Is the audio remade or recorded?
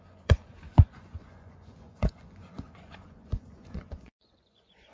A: remade